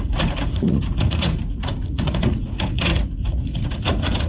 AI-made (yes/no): yes